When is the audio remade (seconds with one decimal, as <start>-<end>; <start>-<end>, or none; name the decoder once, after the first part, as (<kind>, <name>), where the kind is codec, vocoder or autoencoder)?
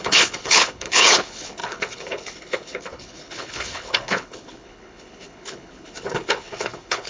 0.0-7.1 (codec, HILCodec)